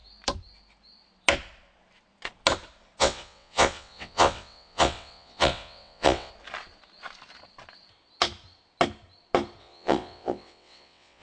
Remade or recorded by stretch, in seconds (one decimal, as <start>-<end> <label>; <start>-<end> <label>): 0.0-3.0 recorded; 3.0-6.3 remade; 6.3-9.6 recorded; 9.6-11.2 remade